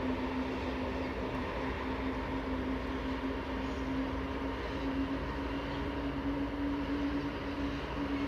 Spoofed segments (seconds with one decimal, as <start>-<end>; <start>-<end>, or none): none